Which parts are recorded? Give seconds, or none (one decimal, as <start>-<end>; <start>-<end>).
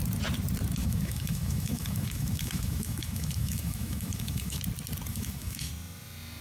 0.0-0.8; 4.6-5.1; 5.7-6.4